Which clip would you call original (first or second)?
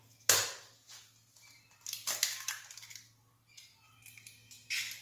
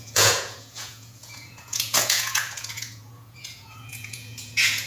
first